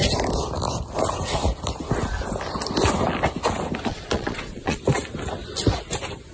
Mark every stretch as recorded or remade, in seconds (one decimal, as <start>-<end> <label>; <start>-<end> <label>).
0.0-3.9 recorded; 3.9-4.8 remade; 4.8-6.3 recorded